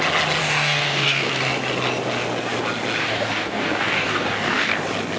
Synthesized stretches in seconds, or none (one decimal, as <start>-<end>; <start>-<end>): 0.4-1.3; 3.0-4.7